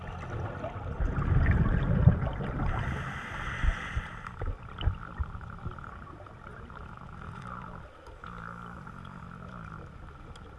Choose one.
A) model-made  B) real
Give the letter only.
B